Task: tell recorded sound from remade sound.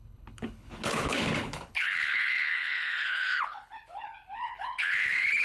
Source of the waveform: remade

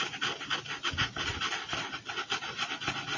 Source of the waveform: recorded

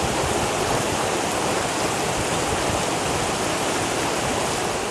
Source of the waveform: recorded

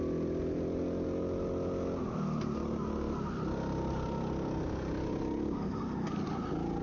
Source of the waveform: recorded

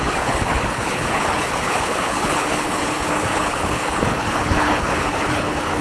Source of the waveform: remade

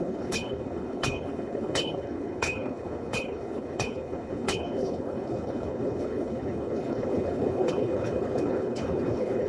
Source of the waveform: remade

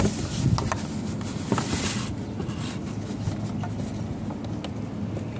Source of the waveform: recorded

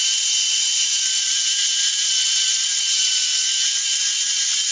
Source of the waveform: recorded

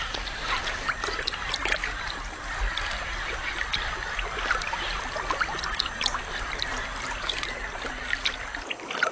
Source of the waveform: recorded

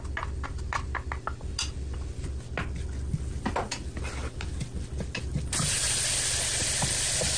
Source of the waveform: recorded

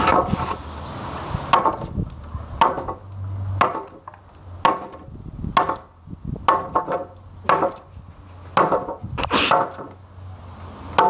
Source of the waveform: recorded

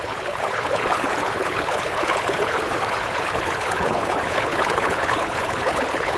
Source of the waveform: remade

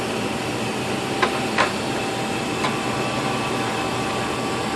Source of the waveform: recorded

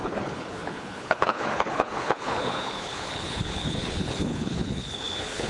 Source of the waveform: remade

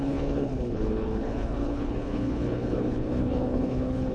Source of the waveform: remade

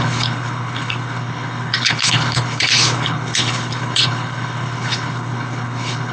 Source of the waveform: remade